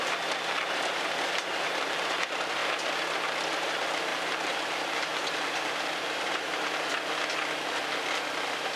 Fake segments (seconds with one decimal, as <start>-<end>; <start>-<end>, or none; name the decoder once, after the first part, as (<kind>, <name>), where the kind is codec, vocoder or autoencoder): 0.0-2.6 (vocoder, BigVGAN v2); 3.6-6.9